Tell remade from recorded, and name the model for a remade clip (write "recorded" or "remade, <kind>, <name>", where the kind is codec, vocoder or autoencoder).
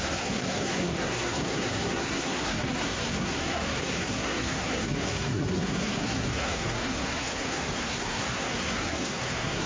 remade, codec, SNAC